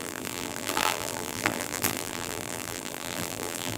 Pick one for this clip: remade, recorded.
remade